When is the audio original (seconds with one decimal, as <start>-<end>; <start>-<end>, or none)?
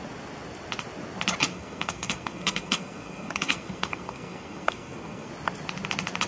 0.0-1.5; 5.3-6.3